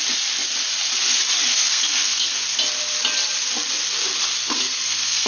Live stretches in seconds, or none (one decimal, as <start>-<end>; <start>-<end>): 0.0-1.5; 2.4-4.4